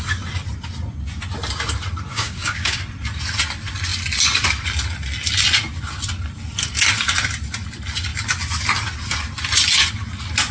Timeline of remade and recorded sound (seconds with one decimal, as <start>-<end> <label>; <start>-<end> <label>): 0.0-2.1 recorded; 2.1-2.8 remade; 2.8-10.5 recorded